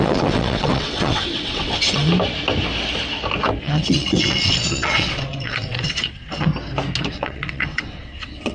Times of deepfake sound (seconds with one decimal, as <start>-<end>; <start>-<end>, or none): 0.0-2.1; 3.6-6.5; 7.1-8.5